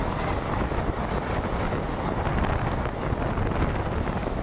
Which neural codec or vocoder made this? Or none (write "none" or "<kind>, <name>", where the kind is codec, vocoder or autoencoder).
none